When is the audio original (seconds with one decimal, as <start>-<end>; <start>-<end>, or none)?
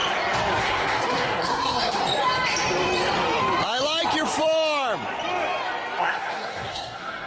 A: 0.0-0.6; 2.0-6.0